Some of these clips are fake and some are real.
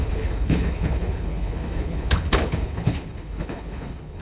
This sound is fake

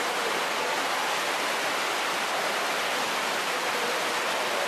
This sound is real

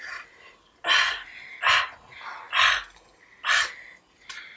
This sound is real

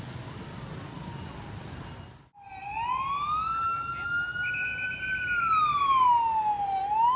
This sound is real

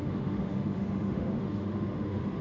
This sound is fake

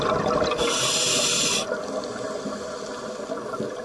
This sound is real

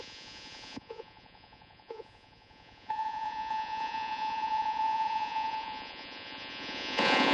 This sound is fake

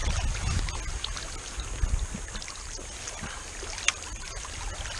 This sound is real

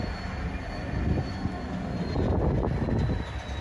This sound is real